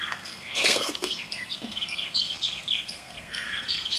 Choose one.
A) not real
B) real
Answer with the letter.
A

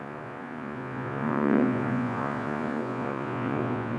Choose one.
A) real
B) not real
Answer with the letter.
B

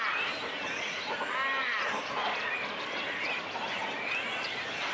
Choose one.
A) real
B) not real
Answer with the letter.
A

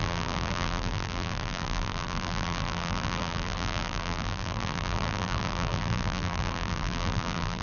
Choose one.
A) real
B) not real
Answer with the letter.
B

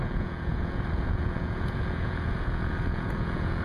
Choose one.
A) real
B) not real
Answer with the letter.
B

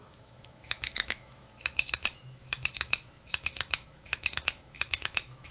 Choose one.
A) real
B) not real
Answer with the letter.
B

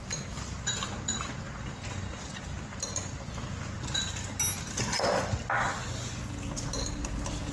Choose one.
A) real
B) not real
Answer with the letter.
A